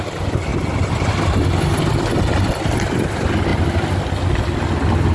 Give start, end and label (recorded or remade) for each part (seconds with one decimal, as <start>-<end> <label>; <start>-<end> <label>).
0.0-5.1 recorded